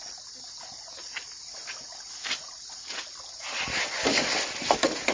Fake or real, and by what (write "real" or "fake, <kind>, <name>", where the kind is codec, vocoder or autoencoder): real